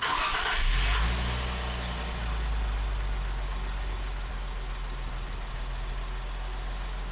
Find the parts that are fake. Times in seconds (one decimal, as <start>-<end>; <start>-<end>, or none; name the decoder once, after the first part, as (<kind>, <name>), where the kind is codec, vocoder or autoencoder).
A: none